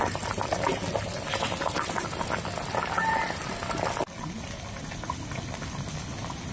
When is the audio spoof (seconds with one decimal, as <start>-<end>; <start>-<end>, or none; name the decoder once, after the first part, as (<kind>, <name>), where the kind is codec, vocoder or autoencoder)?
none